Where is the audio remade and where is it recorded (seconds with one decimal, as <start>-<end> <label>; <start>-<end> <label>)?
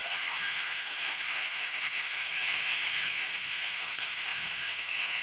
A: 0.0-5.2 remade